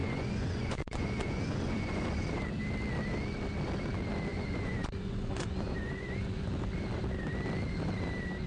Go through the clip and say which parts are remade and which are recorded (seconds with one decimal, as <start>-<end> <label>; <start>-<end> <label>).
0.0-2.5 remade; 2.5-4.3 recorded; 4.3-6.5 remade; 6.5-8.5 recorded